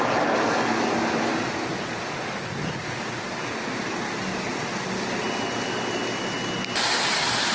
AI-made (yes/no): no